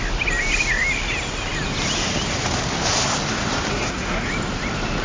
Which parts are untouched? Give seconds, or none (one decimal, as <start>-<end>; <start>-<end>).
0.0-3.7; 4.3-5.0